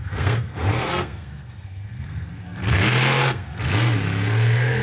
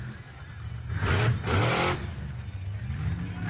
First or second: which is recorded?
second